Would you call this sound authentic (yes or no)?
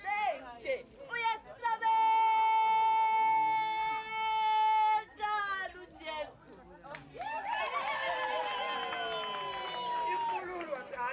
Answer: yes